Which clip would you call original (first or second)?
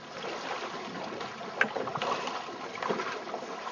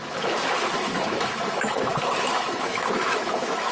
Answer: first